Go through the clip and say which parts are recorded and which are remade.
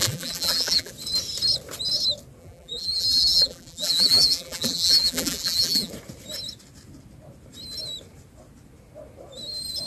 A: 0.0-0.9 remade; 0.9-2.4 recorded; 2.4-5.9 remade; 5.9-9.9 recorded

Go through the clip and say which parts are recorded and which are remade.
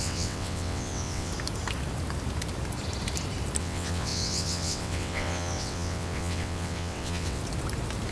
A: 0.0-1.3 remade; 1.3-3.6 recorded; 3.6-7.4 remade; 7.4-8.1 recorded